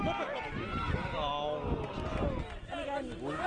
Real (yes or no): yes